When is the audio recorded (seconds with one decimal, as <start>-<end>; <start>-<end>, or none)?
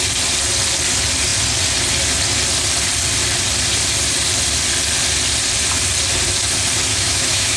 0.0-6.9